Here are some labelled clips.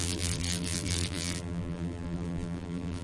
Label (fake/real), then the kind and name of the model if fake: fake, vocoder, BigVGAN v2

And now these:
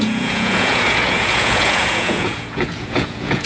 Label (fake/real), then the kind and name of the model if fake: fake, vocoder, Vocos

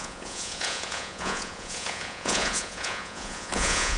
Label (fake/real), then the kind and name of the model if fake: fake, vocoder, Vocos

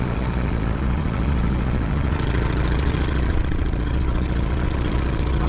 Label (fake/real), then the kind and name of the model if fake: fake, vocoder, Vocos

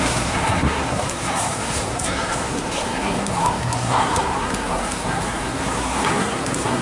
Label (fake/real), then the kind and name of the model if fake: fake, codec, SNAC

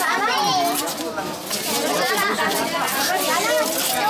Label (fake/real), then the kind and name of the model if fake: real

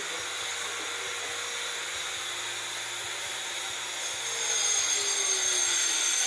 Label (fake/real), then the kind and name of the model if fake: real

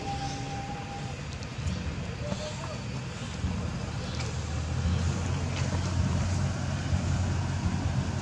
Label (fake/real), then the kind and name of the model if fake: real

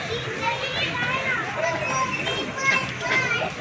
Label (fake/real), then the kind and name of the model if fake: real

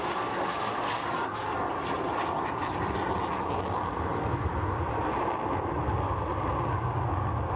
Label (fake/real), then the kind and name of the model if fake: real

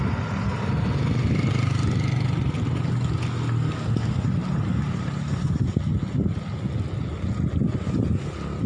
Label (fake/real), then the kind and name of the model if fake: real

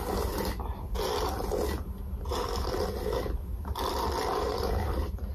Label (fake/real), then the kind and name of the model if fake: real